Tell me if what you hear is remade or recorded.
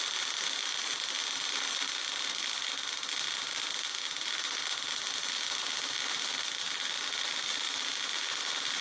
recorded